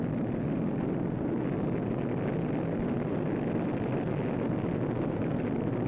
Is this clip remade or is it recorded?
recorded